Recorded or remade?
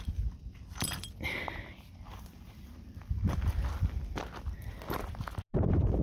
remade